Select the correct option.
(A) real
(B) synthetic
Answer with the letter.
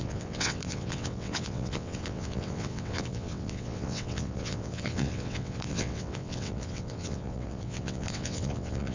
B